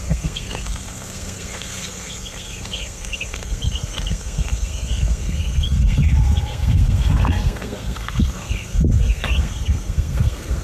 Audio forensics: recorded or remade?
remade